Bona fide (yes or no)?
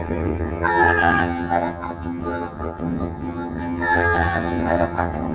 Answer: no